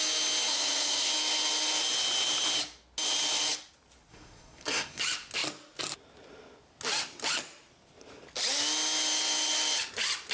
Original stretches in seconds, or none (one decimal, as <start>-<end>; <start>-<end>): 0.0-0.5; 1.1-4.1; 5.0-10.3